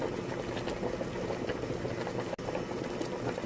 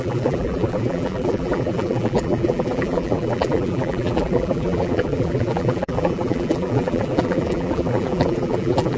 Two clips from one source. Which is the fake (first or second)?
second